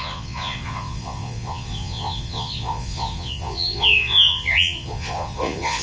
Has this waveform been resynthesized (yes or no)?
yes